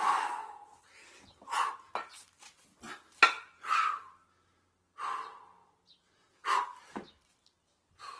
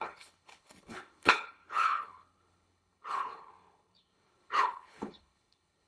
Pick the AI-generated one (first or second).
second